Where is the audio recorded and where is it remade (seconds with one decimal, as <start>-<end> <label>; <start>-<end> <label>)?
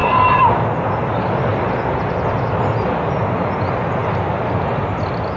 0.0-1.5 recorded; 1.5-2.7 remade; 2.7-5.4 recorded